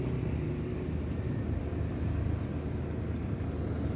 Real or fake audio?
real